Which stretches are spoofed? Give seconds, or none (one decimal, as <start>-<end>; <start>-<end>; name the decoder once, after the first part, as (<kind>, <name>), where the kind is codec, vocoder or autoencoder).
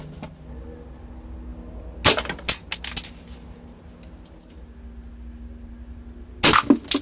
none